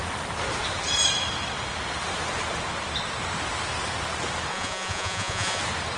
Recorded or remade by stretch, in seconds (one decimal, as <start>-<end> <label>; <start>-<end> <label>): 0.0-4.5 recorded; 4.5-5.6 remade; 5.6-6.0 recorded